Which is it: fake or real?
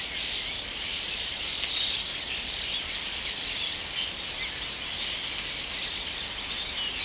real